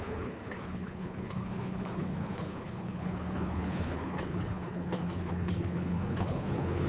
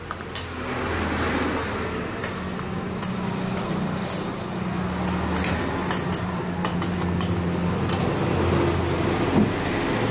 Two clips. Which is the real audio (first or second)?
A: second